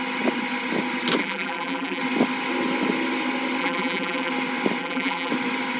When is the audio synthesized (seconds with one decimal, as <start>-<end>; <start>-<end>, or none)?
1.2-2.0; 3.6-4.3; 4.8-5.3